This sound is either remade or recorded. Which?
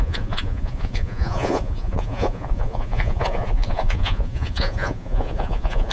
remade